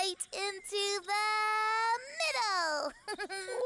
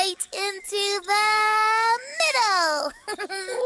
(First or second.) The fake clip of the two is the second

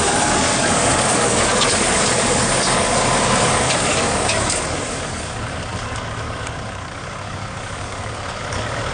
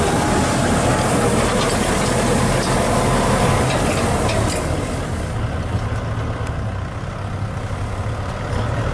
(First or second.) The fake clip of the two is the first